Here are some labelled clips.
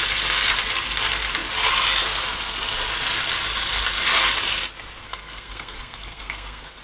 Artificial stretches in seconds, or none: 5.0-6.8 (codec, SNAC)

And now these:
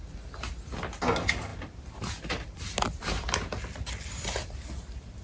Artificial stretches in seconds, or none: none

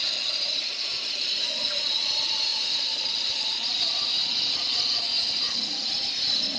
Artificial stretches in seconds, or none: none

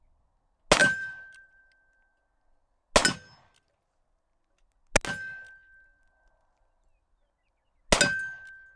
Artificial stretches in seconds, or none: 0.8-1.6 (vocoder, BigVGAN v2)